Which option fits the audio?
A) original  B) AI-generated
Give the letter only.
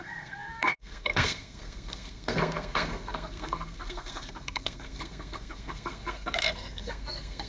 B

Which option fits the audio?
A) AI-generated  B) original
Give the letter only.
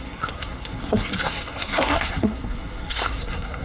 A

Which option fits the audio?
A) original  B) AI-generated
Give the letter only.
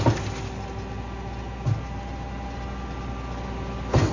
A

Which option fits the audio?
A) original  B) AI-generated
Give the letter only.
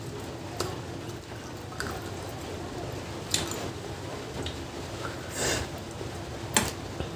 A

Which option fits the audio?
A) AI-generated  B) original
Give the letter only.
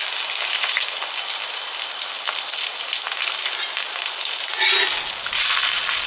B